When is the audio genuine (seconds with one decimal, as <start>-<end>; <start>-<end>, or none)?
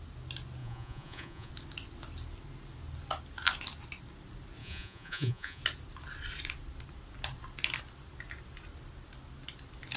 0.0-0.6; 1.5-4.6; 5.6-10.0